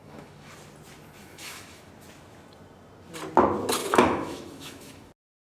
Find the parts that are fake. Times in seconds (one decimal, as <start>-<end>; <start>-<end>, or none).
0.0-0.5; 1.2-1.9; 3.8-5.1